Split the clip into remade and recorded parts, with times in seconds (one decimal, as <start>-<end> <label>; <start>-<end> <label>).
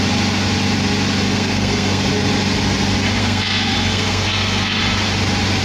0.0-1.3 recorded; 1.3-2.0 remade; 2.0-3.2 recorded; 3.2-4.8 remade; 4.8-5.6 recorded